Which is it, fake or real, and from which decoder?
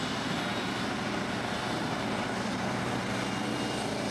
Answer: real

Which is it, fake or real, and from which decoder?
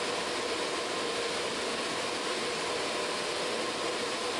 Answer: real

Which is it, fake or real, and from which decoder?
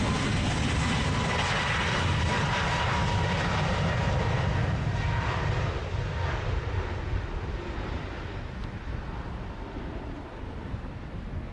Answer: real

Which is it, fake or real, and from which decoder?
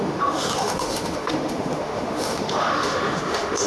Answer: fake, autoencoder, DAC-VAE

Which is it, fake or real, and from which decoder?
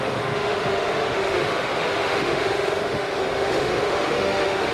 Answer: fake, autoencoder, DAC-VAE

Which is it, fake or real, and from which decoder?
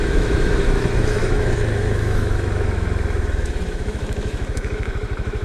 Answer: fake, autoencoder, DAC-VAE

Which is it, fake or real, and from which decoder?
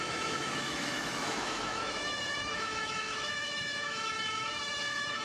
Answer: fake, autoencoder, DAC-VAE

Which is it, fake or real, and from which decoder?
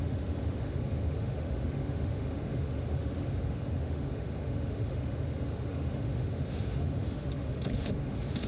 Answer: fake, autoencoder, DAC-VAE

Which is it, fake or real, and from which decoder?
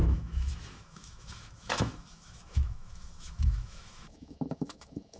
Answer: fake, autoencoder, DAC-VAE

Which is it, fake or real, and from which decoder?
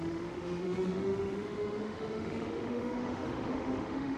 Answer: fake, autoencoder, DAC-VAE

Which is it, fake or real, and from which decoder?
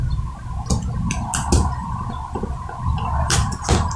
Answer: real